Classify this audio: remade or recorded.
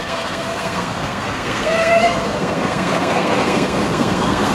remade